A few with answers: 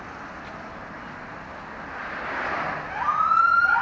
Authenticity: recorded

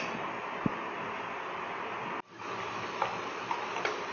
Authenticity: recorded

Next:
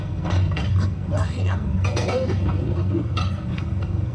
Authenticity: remade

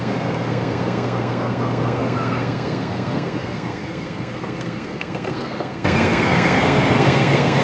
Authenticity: remade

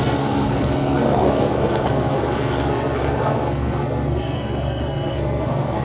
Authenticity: remade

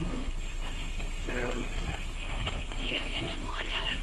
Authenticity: remade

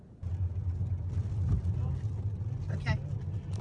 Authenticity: recorded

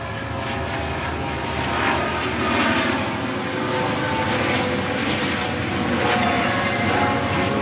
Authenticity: recorded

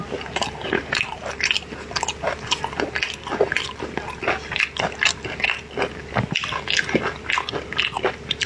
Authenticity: recorded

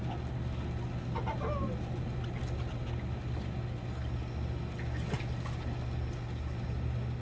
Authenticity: recorded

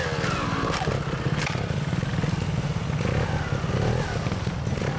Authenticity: recorded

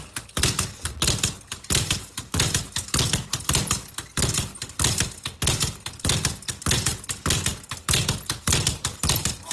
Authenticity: recorded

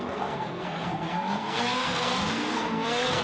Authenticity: remade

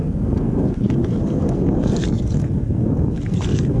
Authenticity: remade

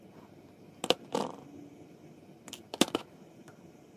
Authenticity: recorded